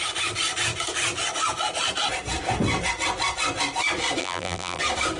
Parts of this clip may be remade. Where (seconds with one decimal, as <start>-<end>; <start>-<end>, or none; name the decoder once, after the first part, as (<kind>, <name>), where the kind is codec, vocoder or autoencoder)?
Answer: 4.2-4.8 (vocoder, BigVGAN v2)